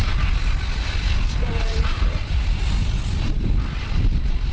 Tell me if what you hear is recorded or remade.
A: recorded